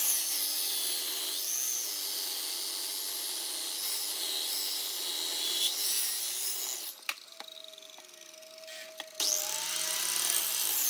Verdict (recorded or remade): recorded